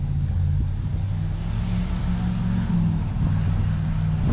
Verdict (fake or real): real